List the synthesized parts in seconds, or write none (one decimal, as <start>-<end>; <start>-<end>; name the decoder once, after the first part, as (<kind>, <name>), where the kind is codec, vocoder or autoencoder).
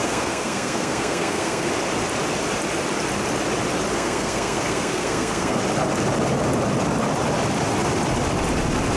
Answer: 0.0-1.7 (codec, SNAC); 3.9-5.6